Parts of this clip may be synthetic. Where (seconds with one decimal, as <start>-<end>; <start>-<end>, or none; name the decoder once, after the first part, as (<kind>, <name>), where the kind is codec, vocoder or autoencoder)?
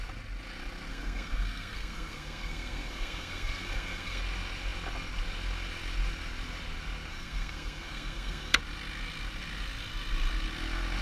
0.9-4.2 (codec, SNAC); 7.1-8.6